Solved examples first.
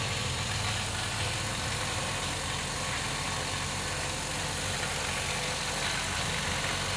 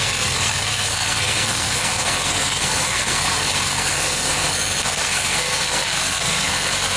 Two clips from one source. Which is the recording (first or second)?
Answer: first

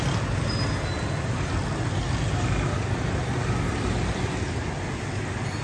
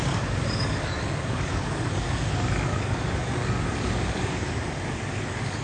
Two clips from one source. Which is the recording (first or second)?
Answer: first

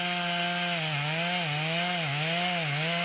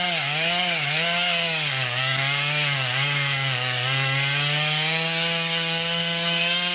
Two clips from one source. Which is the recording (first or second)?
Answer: first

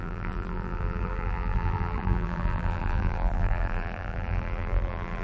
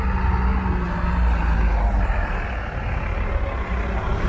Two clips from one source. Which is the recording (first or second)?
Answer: second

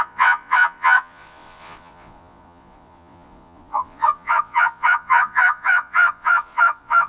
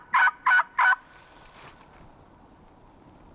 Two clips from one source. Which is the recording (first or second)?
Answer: second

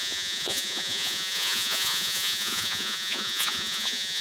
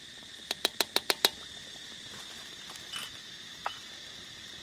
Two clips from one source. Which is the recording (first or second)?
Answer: second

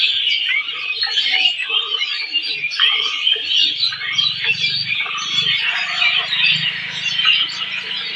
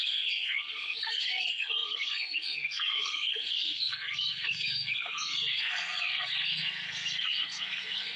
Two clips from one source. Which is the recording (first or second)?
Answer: first